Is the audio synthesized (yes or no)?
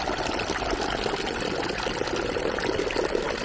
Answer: no